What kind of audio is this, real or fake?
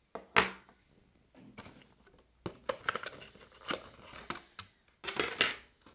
real